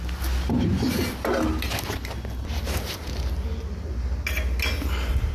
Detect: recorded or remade recorded